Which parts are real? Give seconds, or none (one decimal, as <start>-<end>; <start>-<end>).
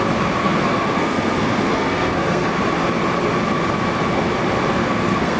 0.0-0.4; 2.6-4.8